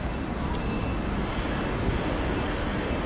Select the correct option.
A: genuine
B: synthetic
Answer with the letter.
A